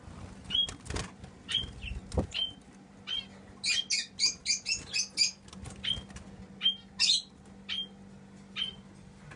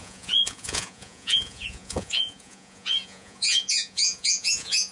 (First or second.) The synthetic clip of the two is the second